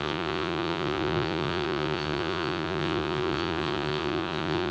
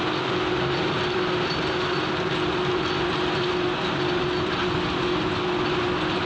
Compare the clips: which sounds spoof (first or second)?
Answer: first